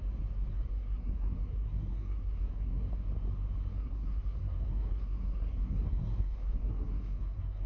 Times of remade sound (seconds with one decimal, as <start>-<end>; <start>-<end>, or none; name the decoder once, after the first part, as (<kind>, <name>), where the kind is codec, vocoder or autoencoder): 0.5-2.9 (codec, SNAC); 3.7-7.7